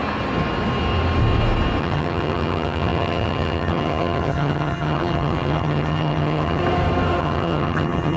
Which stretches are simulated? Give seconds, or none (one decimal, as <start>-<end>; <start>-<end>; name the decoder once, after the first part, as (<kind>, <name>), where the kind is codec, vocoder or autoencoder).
1.8-6.6 (vocoder, HiFi-GAN); 7.2-8.2